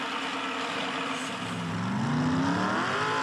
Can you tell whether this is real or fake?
real